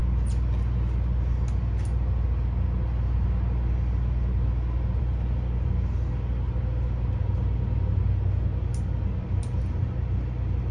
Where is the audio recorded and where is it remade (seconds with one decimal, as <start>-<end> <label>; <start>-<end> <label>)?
0.0-10.7 recorded